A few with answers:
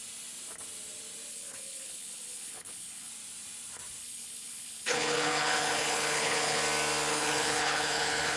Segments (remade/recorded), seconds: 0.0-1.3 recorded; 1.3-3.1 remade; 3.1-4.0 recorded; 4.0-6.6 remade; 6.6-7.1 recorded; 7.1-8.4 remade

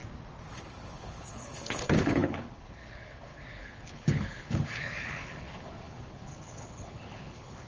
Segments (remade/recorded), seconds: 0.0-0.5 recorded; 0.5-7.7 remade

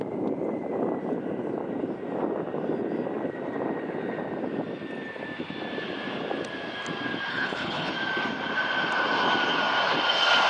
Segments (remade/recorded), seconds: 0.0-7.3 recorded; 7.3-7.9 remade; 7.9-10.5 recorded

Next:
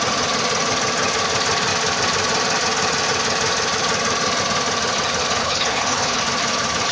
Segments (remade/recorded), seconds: 0.0-5.4 recorded; 5.4-6.2 remade; 6.2-6.9 recorded

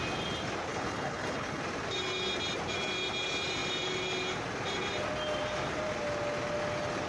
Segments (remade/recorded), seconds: 0.0-0.7 recorded; 0.7-1.6 remade; 1.6-7.1 recorded

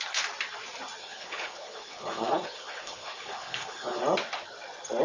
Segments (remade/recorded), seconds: 0.0-1.0 recorded; 1.0-4.0 remade; 4.0-5.0 recorded